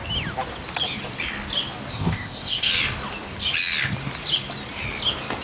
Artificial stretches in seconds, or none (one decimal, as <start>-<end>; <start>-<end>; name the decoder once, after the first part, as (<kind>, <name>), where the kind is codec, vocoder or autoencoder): 1.9-2.7 (codec, ZipCodec)